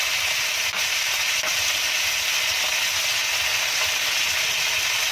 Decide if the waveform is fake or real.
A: real